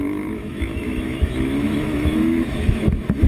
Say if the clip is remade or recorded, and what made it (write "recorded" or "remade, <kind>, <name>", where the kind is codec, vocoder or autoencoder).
remade, autoencoder, DAC-VAE